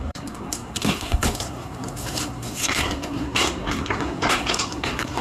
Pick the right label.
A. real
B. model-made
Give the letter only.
B